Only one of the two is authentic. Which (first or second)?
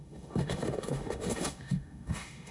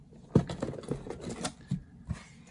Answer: second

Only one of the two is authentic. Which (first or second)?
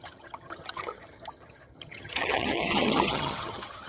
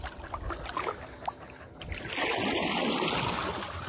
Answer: second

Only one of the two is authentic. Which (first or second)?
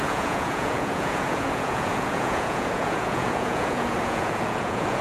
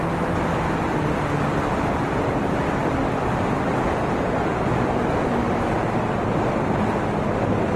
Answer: second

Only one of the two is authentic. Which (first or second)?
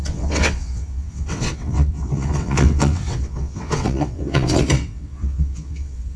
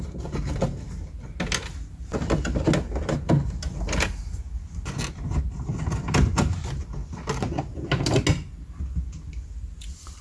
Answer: second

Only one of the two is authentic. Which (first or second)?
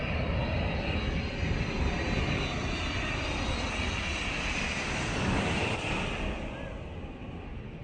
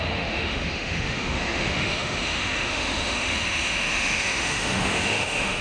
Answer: first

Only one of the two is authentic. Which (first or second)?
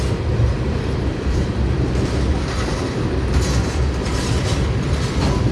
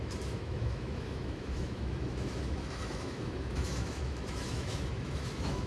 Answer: first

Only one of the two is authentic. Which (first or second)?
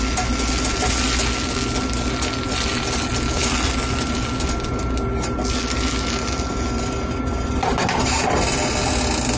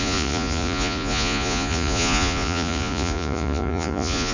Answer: first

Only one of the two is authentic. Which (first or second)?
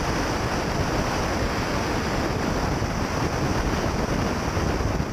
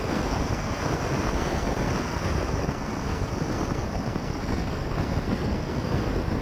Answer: first